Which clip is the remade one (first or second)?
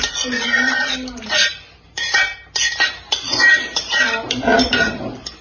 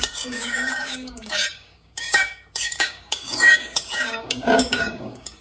second